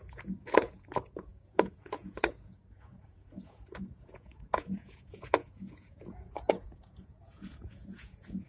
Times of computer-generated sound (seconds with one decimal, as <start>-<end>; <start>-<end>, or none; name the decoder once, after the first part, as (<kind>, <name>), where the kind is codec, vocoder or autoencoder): 0.0-8.5 (vocoder, Vocos)